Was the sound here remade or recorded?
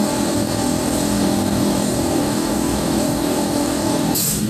remade